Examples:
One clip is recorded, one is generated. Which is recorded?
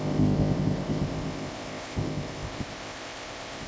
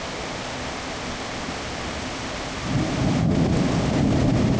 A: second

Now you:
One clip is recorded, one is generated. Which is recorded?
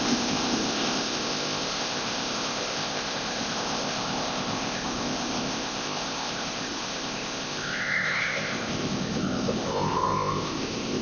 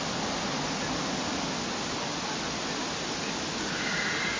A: second